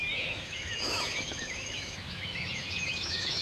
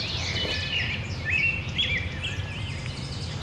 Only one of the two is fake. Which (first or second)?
first